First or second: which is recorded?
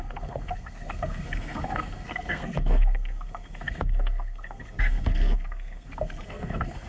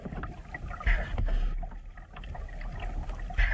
second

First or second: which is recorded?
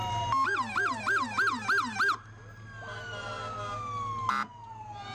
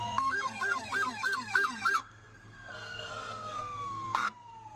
first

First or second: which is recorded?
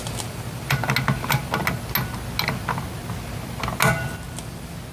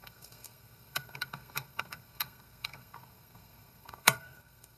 first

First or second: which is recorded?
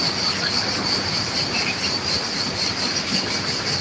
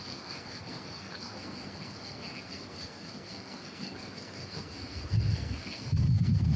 first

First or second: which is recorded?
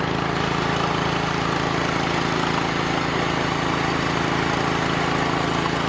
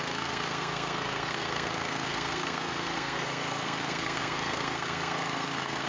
first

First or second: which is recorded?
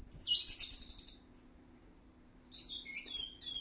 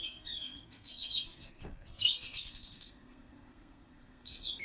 first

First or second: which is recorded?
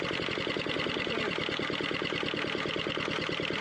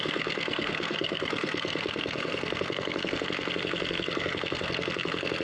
first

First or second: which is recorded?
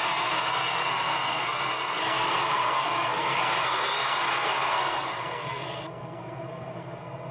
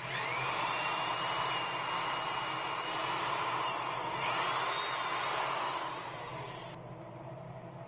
second